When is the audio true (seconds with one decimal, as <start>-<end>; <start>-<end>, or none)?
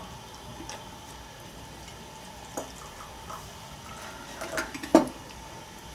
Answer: 0.0-5.9